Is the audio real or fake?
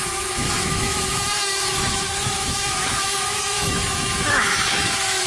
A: fake